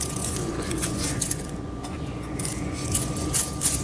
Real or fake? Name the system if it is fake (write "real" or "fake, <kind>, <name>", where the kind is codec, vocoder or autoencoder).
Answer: fake, vocoder, Vocos